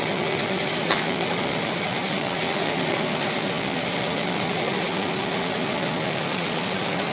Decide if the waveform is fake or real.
fake